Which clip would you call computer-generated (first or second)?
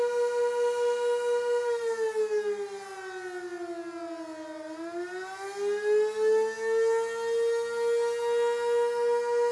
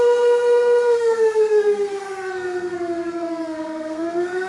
second